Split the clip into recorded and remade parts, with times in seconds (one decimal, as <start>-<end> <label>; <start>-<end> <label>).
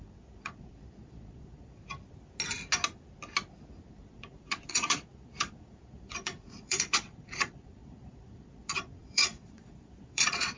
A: 0.0-1.8 remade; 1.8-3.9 recorded; 3.9-10.6 remade